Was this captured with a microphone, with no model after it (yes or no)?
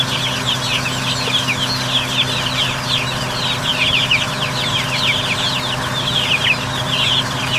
yes